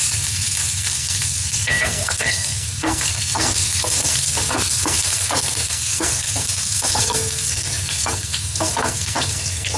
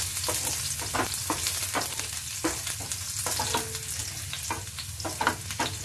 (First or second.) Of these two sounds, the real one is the second